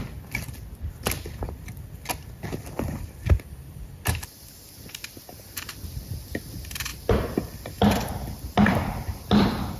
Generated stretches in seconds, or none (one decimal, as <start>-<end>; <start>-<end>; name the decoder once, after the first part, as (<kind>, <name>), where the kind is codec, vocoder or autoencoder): none